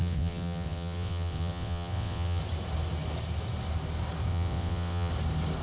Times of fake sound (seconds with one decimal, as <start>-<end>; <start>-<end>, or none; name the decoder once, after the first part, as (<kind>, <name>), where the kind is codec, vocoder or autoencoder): 0.0-2.4 (vocoder, WaveNeXt); 4.3-5.1

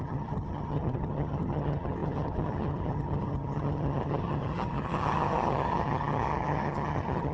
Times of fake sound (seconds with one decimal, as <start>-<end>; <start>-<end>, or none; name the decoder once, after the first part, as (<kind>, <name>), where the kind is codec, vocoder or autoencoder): 0.0-7.3 (vocoder, HiFi-GAN)

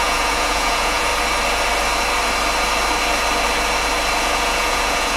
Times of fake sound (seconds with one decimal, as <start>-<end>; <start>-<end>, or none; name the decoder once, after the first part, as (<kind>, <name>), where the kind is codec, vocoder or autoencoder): 0.0-1.1 (vocoder, Vocos); 4.2-5.2

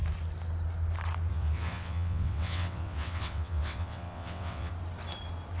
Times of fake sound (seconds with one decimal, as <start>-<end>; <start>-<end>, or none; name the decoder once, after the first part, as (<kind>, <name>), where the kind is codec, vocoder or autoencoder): 1.3-4.7 (vocoder, WaveNeXt)

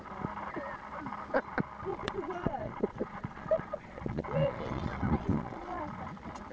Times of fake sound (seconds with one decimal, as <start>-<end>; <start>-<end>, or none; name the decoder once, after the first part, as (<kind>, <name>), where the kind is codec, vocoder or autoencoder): 1.9-5.8 (vocoder, Vocos)

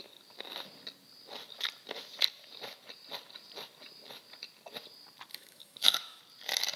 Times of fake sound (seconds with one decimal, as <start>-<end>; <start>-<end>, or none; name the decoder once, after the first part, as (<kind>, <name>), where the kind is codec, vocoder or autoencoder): 5.3-6.2 (autoencoder, DAC-VAE)

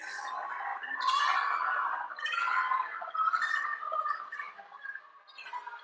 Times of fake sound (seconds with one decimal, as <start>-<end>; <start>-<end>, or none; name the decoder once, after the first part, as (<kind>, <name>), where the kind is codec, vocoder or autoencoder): 0.7-4.2 (vocoder, BigVGAN v2)

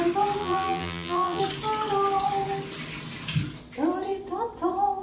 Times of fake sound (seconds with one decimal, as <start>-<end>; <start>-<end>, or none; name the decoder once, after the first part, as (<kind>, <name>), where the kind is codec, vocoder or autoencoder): 0.4-1.4 (vocoder, BigVGAN v2)